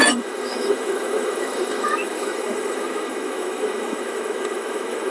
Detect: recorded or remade remade